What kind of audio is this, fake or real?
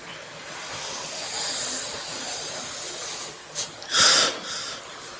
real